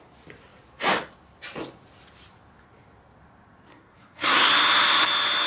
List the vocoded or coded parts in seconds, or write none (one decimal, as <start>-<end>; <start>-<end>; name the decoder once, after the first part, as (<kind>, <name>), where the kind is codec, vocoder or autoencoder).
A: 3.7-4.5 (codec, SNAC)